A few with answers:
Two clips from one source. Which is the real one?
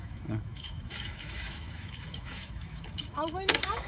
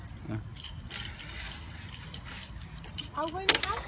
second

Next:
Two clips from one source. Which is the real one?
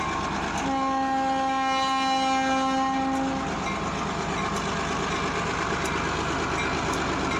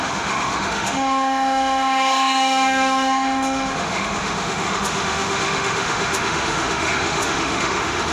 first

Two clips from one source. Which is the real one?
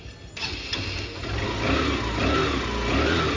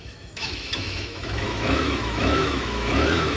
first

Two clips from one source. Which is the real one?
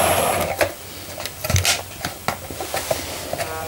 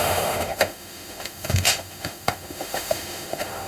first